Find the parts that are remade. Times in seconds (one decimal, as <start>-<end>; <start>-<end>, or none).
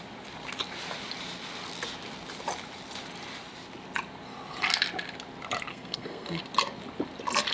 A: 5.7-6.4